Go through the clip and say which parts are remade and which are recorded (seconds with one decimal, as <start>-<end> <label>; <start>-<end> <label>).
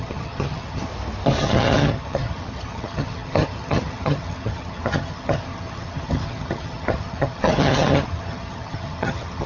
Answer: 0.0-0.9 remade; 0.9-1.4 recorded; 1.4-9.5 remade